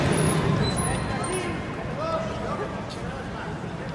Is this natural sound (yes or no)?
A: yes